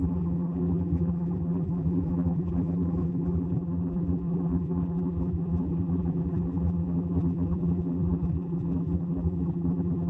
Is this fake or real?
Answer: fake